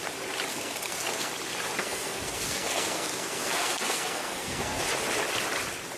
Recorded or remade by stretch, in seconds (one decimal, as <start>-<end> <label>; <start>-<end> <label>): 0.0-0.5 recorded; 0.5-1.3 remade; 1.3-1.8 recorded; 1.8-4.8 remade; 4.8-6.0 recorded